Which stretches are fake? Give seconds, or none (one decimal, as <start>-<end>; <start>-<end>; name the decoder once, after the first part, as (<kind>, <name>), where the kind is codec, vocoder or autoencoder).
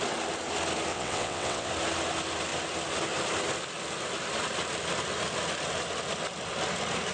0.9-1.7 (vocoder, WaveNeXt)